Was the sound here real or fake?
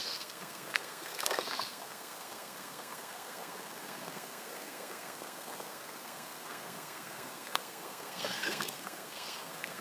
fake